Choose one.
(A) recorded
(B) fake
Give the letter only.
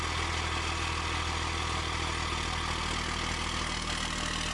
A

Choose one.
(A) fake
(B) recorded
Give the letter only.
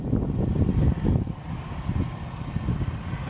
B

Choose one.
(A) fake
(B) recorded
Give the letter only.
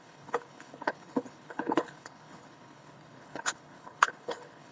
A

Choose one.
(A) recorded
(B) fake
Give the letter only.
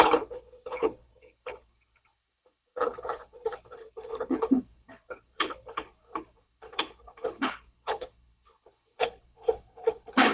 B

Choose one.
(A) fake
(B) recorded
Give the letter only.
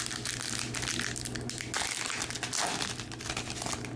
B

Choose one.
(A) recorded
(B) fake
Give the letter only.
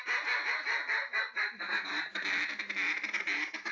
A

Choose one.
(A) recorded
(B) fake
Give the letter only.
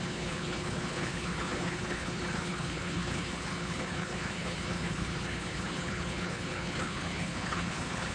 B